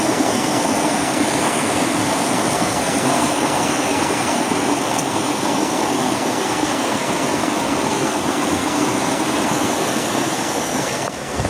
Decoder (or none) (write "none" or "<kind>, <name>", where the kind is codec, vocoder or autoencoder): codec, SNAC